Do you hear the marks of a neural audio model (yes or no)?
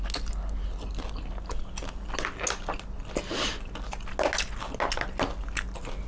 no